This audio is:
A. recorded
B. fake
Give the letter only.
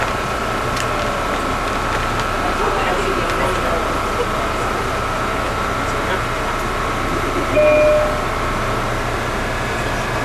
A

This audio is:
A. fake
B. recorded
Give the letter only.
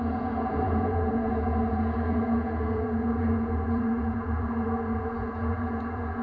A